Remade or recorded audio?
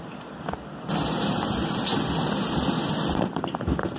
recorded